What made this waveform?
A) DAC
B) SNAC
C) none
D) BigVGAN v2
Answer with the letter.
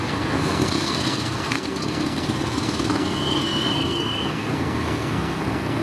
B